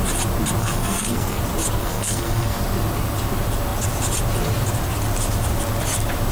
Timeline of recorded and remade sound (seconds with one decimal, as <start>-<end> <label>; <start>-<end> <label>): 0.0-0.6 recorded; 0.6-1.4 remade; 1.4-1.8 recorded; 1.8-2.6 remade; 2.6-6.3 recorded